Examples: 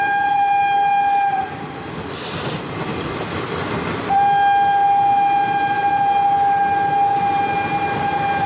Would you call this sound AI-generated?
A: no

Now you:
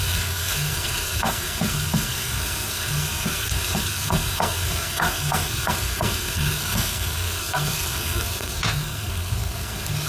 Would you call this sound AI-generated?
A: yes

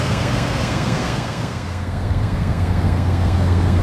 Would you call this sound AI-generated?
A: yes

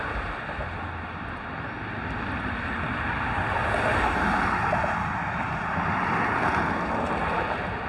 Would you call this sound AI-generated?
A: no